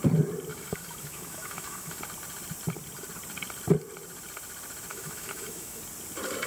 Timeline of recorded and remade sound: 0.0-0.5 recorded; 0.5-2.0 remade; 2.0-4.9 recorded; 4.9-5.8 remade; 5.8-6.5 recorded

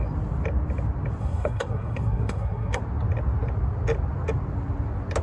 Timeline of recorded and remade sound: 0.0-1.2 recorded; 1.2-2.8 remade; 2.8-5.2 recorded

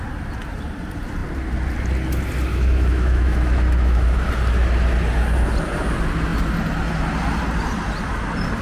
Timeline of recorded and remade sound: 0.0-2.5 recorded; 2.5-4.3 remade; 4.3-8.6 recorded

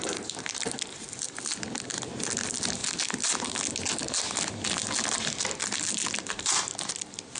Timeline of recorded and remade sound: 0.0-7.4 recorded

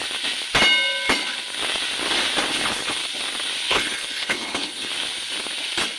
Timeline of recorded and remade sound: 0.0-2.5 recorded; 2.5-3.0 remade; 3.0-3.7 recorded; 3.7-4.9 remade; 4.9-6.0 recorded

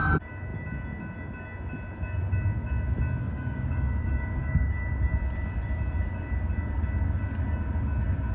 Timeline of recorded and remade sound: 0.0-3.2 recorded; 3.2-4.7 remade; 4.7-8.3 recorded

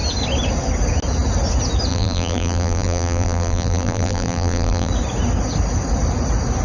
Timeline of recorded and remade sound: 0.0-1.9 recorded; 1.9-4.9 remade; 4.9-6.6 recorded